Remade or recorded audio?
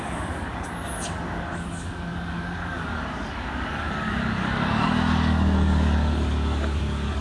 remade